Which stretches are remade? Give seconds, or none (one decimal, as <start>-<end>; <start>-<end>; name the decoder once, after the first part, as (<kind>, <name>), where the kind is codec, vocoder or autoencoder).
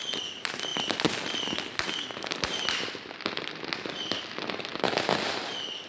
none